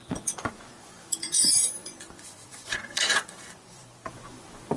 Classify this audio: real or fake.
fake